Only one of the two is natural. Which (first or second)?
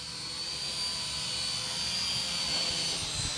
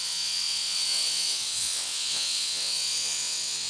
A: first